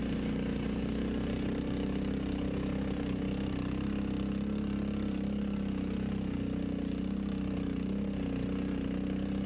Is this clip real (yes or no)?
yes